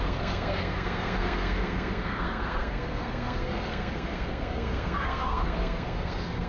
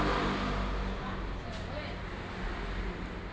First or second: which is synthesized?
first